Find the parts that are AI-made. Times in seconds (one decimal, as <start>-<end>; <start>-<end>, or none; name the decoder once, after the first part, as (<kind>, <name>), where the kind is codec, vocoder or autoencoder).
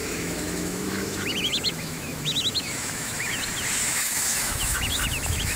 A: 0.0-3.4 (autoencoder, DAC-VAE); 3.8-5.6